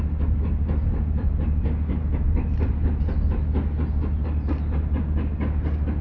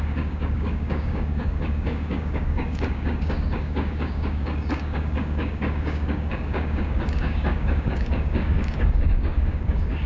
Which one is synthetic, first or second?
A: second